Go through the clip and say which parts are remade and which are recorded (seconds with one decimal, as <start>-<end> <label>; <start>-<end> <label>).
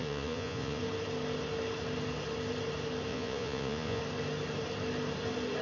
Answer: 0.0-0.8 remade; 0.8-3.1 recorded; 3.1-4.0 remade; 4.0-5.6 recorded